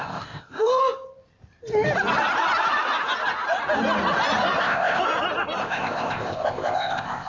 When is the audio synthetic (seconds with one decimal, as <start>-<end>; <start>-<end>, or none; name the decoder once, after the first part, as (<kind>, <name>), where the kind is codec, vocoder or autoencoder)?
0.0-0.8 (codec, ZipCodec); 4.6-5.0; 5.6-7.3